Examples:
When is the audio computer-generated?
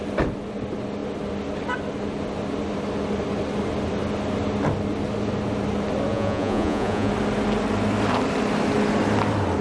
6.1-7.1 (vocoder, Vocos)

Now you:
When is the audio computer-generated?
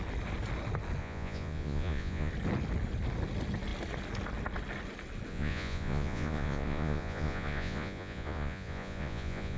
1.0-2.3 (vocoder, Vocos); 5.3-9.6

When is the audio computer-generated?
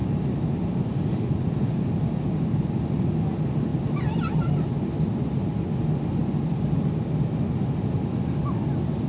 none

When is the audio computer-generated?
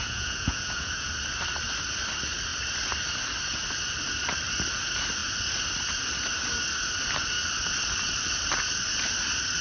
0.0-1.1 (vocoder, Vocos)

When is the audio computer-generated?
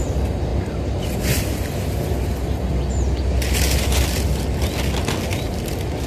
none